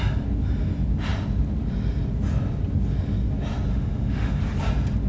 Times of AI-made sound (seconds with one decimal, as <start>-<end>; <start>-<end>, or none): 3.7-4.4